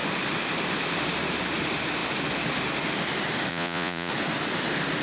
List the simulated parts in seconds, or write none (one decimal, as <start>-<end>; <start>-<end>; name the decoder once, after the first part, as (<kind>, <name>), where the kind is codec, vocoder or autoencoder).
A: 3.5-4.1 (vocoder, Vocos)